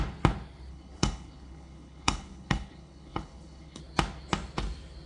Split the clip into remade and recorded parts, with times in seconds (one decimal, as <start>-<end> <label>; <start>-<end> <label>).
0.0-0.7 recorded; 0.7-3.8 remade; 3.8-5.1 recorded